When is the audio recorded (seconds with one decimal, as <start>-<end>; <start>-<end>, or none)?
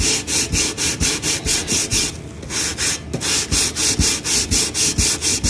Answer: 0.0-1.5; 2.1-5.5